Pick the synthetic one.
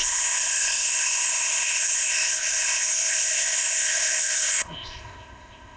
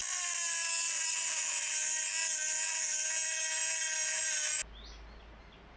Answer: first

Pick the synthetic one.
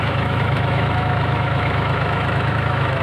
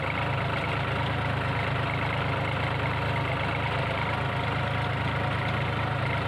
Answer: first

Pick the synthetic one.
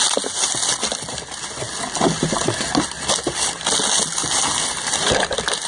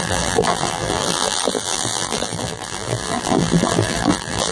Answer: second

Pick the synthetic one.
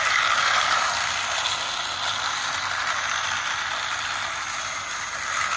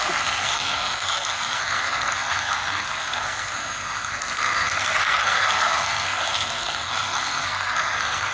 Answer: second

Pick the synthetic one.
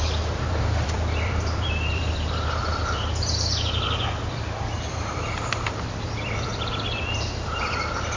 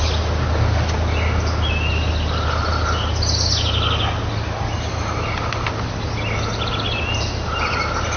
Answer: first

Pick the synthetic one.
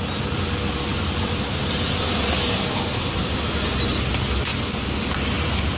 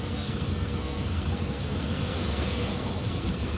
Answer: second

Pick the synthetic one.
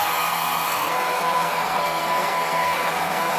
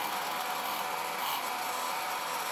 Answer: first